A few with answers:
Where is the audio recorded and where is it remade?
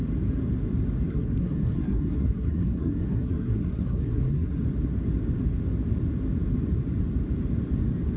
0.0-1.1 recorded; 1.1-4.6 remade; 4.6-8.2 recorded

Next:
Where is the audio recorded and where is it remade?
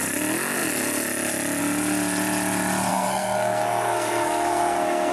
0.0-2.9 recorded; 2.9-5.1 remade